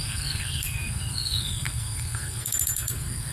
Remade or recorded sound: remade